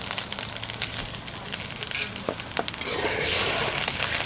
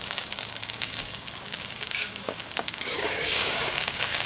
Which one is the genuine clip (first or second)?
first